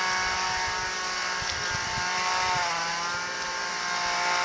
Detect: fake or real real